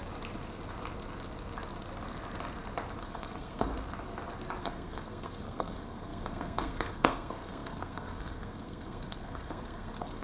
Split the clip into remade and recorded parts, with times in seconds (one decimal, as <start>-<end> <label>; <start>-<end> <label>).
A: 0.0-3.0 recorded; 3.0-3.7 remade; 3.7-4.6 recorded; 4.6-10.2 remade